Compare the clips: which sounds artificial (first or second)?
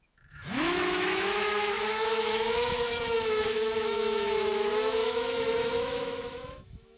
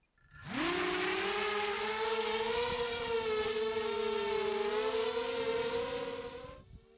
first